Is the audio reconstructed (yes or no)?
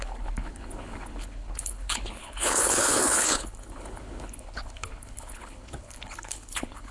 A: yes